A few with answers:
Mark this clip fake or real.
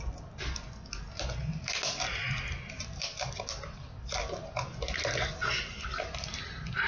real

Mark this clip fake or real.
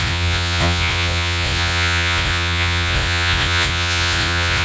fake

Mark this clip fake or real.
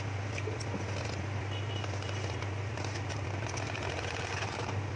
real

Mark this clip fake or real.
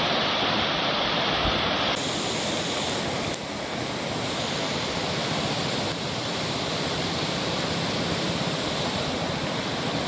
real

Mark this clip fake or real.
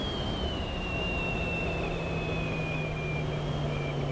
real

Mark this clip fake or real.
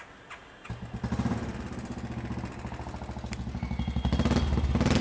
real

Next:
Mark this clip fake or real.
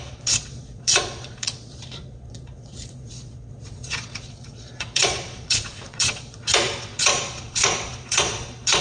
fake